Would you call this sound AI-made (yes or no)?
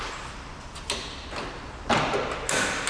no